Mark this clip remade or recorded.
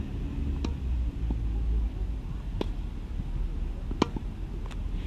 recorded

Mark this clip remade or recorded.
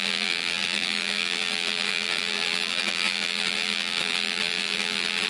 remade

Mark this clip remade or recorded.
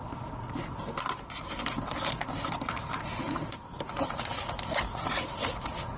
recorded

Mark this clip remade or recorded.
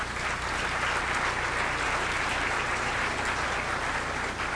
recorded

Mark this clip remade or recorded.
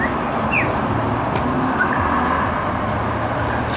recorded